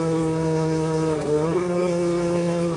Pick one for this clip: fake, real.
fake